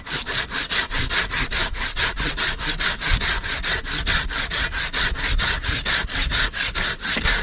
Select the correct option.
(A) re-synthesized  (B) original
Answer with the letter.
B